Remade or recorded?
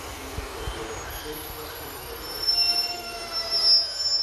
recorded